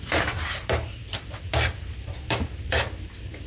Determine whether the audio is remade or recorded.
recorded